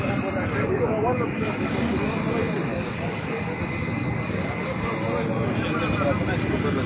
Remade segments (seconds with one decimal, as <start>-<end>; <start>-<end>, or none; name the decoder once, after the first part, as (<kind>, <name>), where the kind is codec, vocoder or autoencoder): 0.5-2.2 (codec, DAC); 2.7-4.9